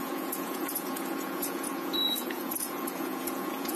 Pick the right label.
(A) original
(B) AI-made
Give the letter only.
B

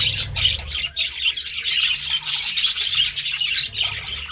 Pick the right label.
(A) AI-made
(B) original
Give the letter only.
B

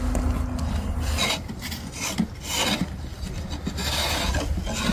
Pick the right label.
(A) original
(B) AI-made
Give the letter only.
A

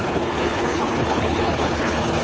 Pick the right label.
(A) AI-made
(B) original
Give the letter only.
A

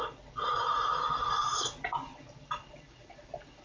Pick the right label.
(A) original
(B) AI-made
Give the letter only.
A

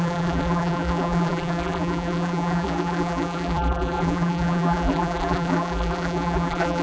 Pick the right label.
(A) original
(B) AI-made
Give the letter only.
B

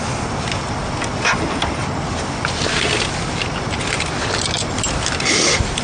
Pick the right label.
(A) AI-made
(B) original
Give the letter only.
B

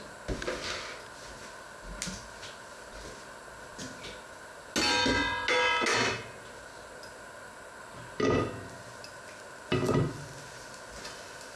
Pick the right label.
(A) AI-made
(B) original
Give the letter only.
B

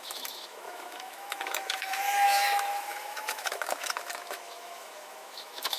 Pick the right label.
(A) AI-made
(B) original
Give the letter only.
A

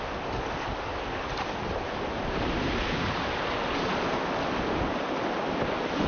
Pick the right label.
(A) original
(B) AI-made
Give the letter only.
A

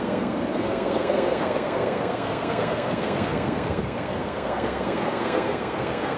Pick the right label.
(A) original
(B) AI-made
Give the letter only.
B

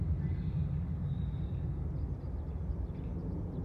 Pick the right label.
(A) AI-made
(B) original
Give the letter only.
B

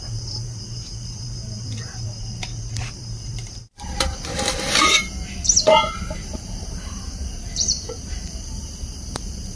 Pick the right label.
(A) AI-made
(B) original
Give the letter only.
A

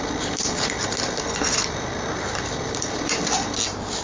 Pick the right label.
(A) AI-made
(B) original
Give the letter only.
B